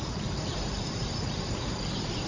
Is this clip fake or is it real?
fake